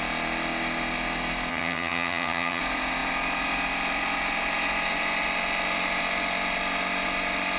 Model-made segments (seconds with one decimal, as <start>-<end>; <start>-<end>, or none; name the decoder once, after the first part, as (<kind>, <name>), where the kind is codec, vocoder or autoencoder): 1.5-2.6 (vocoder, HiFi-GAN)